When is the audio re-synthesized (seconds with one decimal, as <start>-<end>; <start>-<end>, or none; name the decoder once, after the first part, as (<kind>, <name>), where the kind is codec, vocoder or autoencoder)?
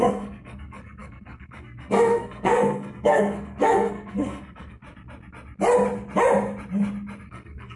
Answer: 0.0-4.8 (codec, SNAC); 7.3-7.8